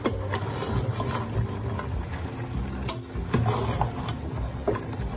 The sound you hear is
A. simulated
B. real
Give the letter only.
B